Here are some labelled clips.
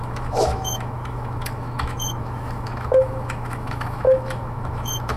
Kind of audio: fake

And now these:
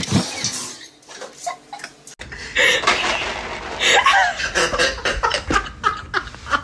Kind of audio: real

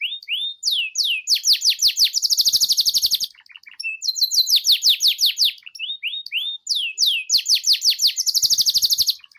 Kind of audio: real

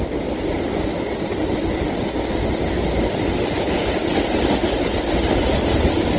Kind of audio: real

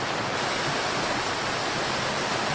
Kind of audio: real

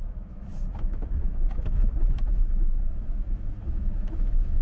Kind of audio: fake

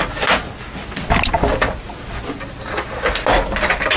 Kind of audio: real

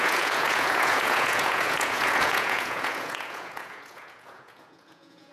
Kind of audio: fake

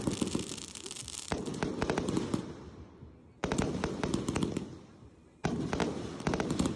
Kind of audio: fake